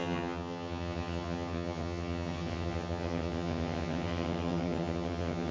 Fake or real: fake